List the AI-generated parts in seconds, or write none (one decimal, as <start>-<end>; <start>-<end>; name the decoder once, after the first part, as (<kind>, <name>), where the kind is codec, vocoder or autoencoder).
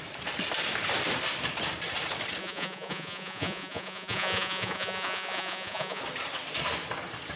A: 2.4-6.0 (vocoder, Vocos)